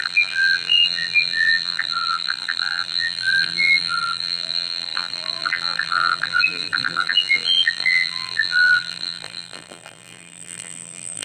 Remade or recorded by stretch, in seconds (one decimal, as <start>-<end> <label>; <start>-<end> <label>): 0.0-11.2 remade